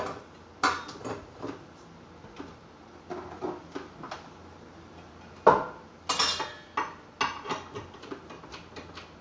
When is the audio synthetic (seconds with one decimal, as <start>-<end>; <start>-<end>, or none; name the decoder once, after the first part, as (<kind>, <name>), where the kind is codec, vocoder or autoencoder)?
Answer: 4.4-5.1 (vocoder, BigVGAN v2)